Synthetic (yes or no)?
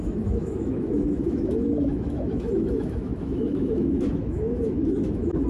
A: yes